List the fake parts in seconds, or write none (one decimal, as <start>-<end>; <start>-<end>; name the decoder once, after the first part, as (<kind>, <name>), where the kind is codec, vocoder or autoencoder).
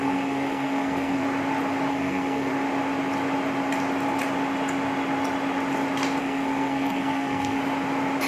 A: 0.0-1.2 (codec, SNAC); 1.9-2.5; 6.2-7.6